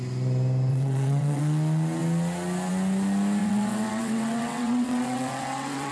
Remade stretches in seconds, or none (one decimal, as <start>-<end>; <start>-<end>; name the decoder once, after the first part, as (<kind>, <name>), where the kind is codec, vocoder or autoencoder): 0.7-1.4 (vocoder, WaveNeXt); 3.4-5.9